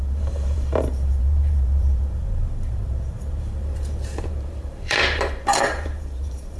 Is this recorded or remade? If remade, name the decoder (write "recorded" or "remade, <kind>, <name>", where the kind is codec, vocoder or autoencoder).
remade, vocoder, BigVGAN v2